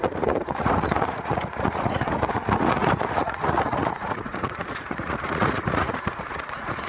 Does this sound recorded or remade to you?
remade